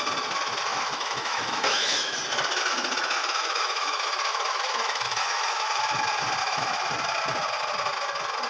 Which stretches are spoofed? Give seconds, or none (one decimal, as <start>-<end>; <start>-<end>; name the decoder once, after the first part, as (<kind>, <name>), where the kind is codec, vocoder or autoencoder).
0.7-2.2 (autoencoder, DAC-VAE); 3.2-5.8; 6.4-6.9

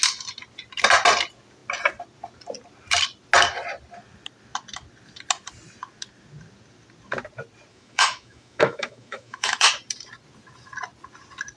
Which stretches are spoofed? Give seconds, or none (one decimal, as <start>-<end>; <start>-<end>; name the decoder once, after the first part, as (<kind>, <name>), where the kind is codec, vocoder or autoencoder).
7.7-9.7 (autoencoder, DAC-VAE)

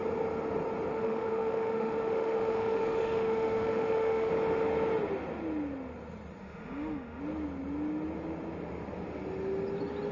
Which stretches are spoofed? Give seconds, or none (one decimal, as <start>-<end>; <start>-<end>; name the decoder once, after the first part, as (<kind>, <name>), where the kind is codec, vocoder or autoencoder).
0.9-4.3 (autoencoder, DAC-VAE); 6.4-7.2

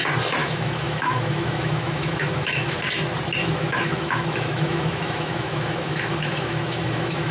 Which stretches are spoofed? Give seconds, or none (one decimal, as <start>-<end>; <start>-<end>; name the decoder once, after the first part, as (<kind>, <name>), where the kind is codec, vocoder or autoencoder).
0.4-2.8 (autoencoder, DAC-VAE); 3.4-7.3

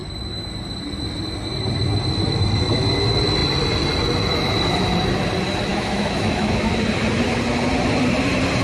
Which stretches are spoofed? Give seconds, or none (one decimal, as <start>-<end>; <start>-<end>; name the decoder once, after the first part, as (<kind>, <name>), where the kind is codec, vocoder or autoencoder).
5.7-6.7 (autoencoder, DAC-VAE)

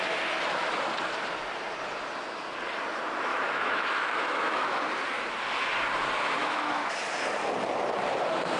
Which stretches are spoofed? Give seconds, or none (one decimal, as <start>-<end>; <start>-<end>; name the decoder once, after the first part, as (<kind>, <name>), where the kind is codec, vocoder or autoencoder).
3.3-4.9 (autoencoder, DAC-VAE); 6.4-6.9

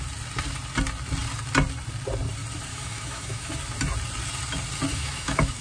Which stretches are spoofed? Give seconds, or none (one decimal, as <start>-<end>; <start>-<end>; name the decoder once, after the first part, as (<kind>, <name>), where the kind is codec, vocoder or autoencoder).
2.7-3.5 (autoencoder, DAC-VAE); 4.9-5.6